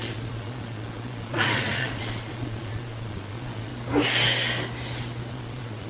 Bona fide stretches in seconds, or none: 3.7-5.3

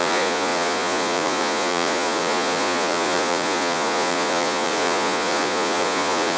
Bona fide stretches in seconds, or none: none